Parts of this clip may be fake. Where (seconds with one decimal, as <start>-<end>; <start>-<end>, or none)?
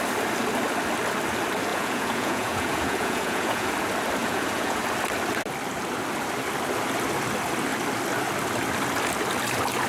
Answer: 1.7-3.7; 4.2-4.8